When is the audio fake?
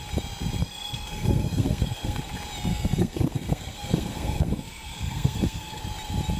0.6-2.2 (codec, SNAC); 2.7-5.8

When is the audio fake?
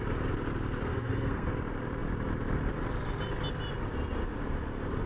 0.9-1.5 (codec, SNAC)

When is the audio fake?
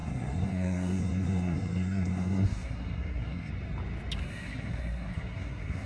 0.0-3.5 (codec, SNAC); 4.2-5.9